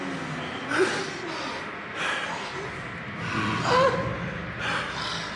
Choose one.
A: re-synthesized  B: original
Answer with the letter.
B